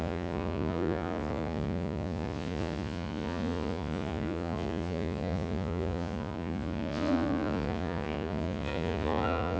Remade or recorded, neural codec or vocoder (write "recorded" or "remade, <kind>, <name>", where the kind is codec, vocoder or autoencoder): remade, vocoder, Vocos